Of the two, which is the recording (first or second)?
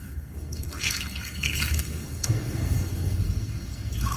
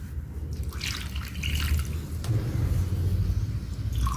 second